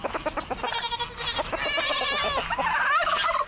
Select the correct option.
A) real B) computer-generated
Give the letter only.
A